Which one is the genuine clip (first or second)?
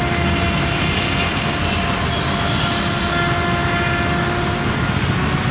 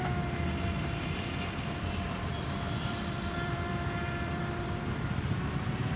first